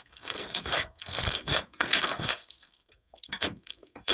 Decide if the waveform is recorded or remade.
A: remade